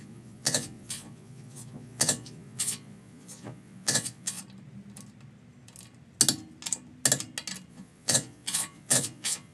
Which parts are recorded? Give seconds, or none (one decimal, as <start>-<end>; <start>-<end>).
4.4-7.7